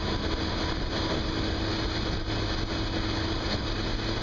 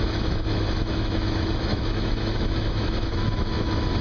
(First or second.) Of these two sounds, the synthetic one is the second